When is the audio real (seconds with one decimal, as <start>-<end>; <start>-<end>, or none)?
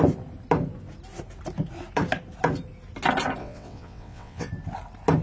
0.0-3.4; 4.5-5.2